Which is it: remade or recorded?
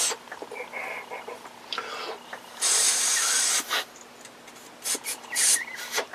recorded